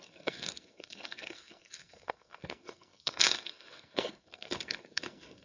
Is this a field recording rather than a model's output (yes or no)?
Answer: no